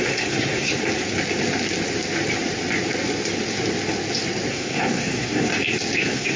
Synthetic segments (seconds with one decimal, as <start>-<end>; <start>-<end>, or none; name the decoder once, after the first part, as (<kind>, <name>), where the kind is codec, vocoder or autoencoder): 0.0-0.7 (codec, SNAC); 4.5-5.5; 6.0-6.4